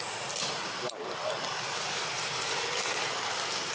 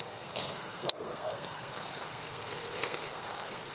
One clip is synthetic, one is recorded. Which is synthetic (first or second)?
second